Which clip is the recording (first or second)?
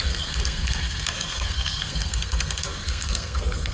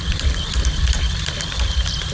second